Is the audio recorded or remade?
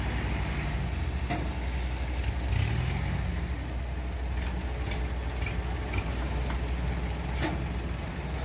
recorded